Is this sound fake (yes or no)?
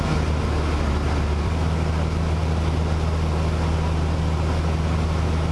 no